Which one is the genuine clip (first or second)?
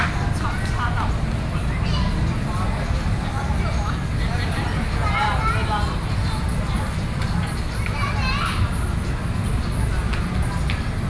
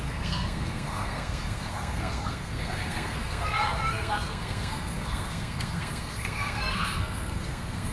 first